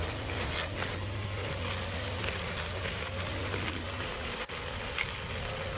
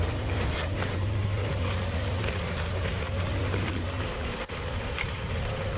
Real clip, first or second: first